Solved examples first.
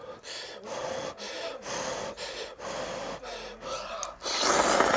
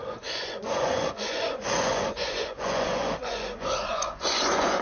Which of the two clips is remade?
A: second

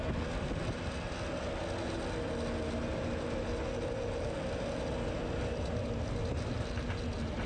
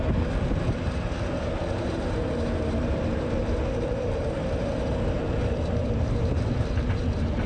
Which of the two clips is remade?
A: second